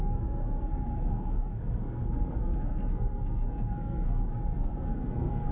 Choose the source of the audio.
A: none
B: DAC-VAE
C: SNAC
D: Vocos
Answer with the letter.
C